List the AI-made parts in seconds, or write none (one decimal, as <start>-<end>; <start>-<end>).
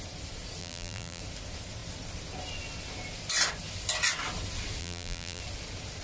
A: 0.6-1.2; 4.8-5.4